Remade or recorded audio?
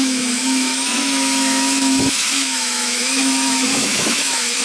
remade